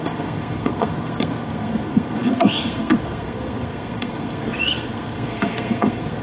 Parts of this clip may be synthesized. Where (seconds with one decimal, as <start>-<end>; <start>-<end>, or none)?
0.0-6.2